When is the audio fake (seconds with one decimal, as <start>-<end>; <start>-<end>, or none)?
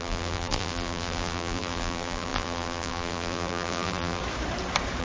0.0-4.2